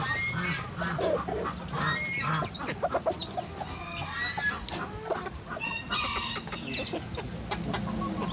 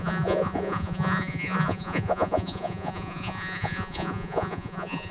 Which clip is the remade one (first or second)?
second